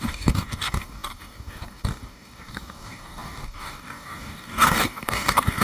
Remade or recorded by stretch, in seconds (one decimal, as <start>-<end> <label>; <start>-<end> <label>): 0.0-5.6 remade